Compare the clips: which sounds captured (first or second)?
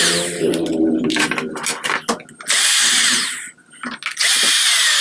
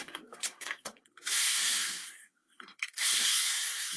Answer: first